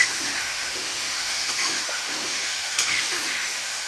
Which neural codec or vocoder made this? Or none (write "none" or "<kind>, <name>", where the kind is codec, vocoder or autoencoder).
autoencoder, DAC-VAE